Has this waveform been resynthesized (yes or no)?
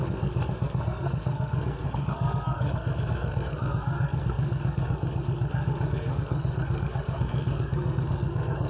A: yes